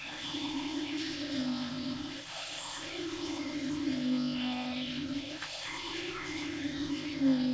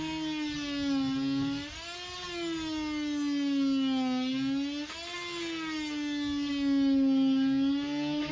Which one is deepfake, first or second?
first